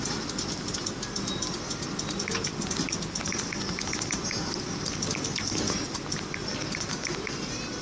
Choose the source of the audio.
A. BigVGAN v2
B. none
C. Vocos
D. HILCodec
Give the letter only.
B